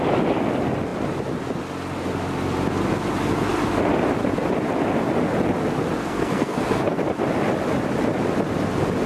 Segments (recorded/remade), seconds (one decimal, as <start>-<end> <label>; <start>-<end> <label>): 0.0-6.0 recorded; 6.0-7.0 remade; 7.0-9.1 recorded